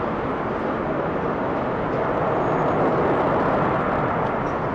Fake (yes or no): no